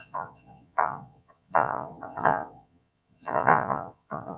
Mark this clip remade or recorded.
remade